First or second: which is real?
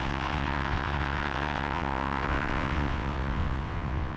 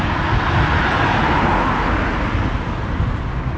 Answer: second